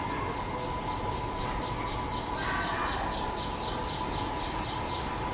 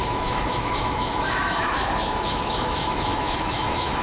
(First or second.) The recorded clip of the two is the first